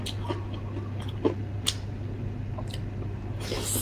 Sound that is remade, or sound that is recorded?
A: recorded